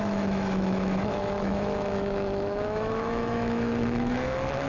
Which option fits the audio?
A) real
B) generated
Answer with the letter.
B